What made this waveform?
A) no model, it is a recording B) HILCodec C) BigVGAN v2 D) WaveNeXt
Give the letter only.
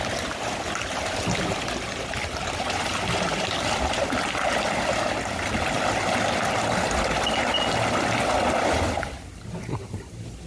A